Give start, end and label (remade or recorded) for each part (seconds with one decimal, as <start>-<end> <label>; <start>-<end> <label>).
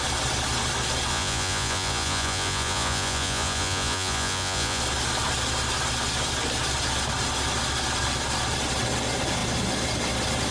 0.0-1.1 recorded; 1.1-4.8 remade; 4.8-10.5 recorded